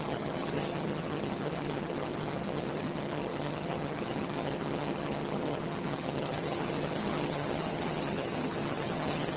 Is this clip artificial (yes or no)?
yes